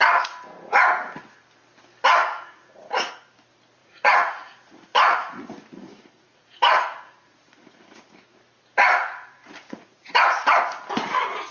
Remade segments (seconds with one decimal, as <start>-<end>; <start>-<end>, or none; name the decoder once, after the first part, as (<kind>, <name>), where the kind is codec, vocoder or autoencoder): 2.2-3.3 (vocoder, Vocos); 3.8-8.1; 9.0-10.4